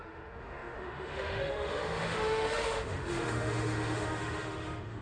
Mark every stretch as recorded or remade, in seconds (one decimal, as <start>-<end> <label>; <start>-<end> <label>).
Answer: 0.0-5.0 remade